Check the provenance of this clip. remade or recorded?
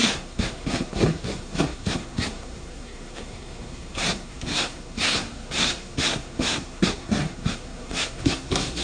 remade